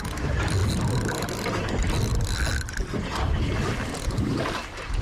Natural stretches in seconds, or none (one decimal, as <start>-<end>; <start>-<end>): 0.6-1.3; 2.1-2.9